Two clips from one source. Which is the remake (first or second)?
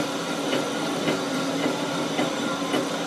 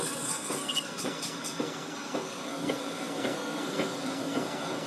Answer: second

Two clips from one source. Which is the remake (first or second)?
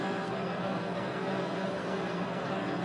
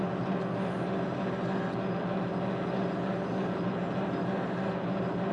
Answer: first